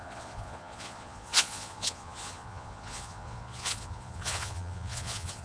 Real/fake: fake